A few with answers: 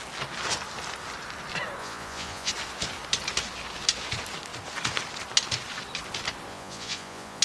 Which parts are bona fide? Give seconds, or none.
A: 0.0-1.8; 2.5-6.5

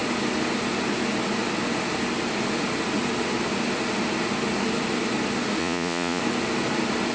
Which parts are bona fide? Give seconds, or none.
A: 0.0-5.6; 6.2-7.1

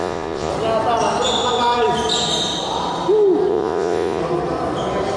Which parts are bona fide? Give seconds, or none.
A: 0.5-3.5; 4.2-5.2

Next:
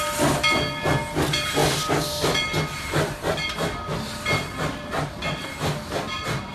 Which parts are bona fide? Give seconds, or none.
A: 0.0-6.5

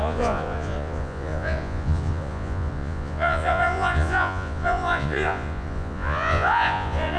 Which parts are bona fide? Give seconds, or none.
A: none

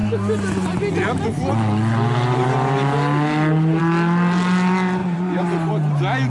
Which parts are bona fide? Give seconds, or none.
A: 0.0-5.0; 5.7-6.3